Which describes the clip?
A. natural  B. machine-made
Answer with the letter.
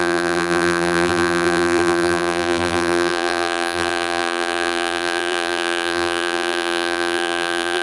B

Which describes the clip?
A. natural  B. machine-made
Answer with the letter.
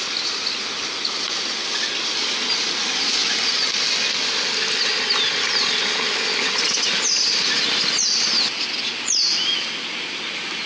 A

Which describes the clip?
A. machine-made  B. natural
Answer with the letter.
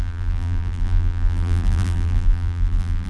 A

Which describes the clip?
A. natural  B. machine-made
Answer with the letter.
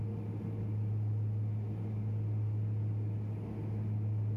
A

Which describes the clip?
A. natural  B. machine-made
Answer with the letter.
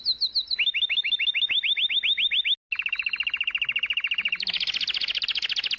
A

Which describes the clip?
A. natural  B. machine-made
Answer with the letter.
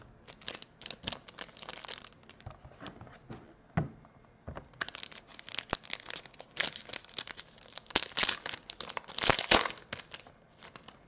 A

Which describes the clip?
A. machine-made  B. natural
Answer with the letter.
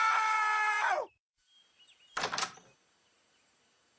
B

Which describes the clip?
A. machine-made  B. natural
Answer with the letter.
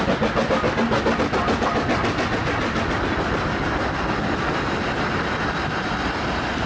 B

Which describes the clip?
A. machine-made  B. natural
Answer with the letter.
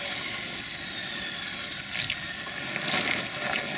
B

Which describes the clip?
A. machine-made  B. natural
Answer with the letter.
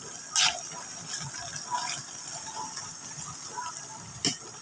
B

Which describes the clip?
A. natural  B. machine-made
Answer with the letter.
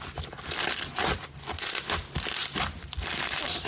A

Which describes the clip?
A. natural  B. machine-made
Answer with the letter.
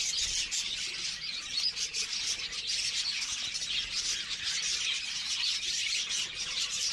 A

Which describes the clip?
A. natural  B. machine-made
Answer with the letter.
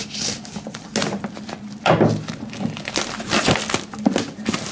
A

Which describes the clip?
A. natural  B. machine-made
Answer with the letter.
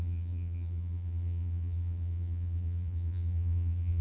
B